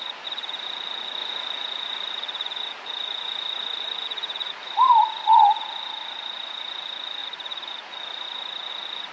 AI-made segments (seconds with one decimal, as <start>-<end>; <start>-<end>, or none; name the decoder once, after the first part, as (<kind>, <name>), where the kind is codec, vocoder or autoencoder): 0.0-9.1 (vocoder, Vocos)